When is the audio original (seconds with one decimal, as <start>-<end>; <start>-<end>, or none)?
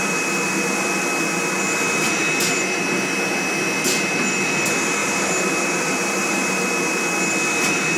0.0-5.0; 6.6-8.0